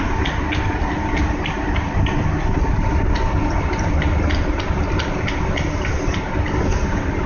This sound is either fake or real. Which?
real